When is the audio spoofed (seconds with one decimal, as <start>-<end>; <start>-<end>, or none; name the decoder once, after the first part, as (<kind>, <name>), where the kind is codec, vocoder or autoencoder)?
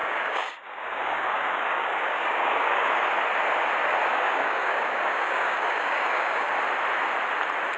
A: 0.0-2.9 (codec, DAC); 4.1-6.5